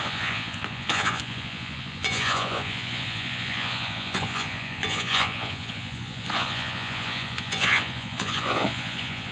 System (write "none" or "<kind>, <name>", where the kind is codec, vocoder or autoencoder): vocoder, Vocos